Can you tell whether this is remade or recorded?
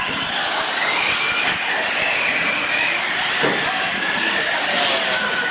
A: recorded